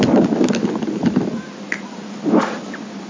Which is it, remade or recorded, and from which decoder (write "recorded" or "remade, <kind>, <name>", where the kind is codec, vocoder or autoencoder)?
recorded